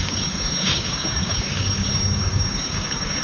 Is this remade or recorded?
remade